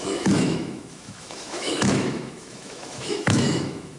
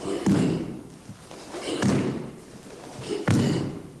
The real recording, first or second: second